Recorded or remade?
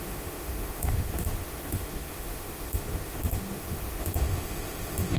remade